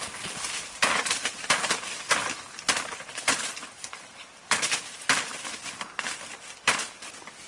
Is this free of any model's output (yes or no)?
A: yes